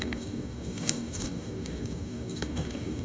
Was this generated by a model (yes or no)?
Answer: yes